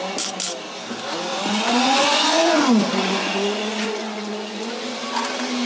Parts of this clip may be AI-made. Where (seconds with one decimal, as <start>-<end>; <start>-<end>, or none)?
1.3-4.7